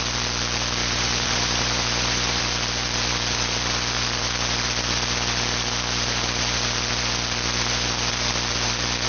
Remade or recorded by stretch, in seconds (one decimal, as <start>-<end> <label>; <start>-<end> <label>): 0.0-0.8 recorded; 0.8-2.4 remade; 2.4-9.1 recorded